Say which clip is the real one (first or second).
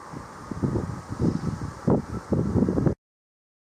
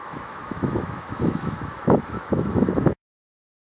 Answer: first